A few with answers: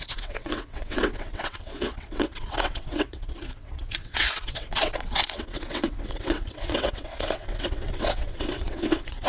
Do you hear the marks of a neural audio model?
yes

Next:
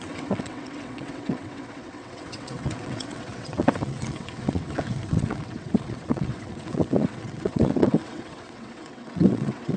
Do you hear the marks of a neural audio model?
yes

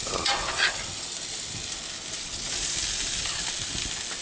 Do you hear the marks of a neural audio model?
no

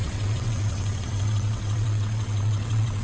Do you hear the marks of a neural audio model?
yes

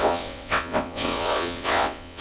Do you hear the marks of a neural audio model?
yes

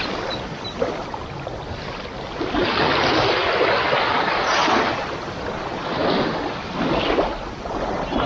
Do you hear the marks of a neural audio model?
no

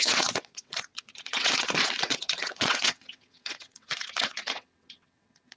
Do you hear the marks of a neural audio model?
yes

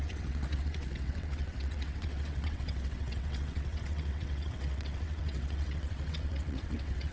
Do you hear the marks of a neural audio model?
yes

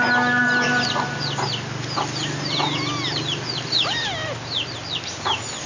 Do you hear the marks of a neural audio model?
no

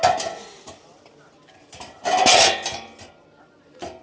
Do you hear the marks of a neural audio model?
no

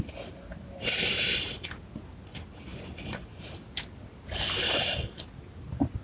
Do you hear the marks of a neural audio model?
no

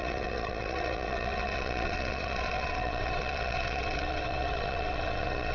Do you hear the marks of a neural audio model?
yes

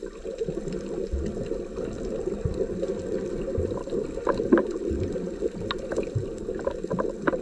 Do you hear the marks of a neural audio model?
no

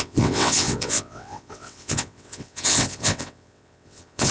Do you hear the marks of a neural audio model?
yes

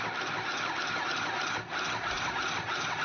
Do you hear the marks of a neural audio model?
no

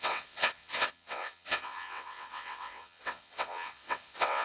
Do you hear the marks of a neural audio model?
yes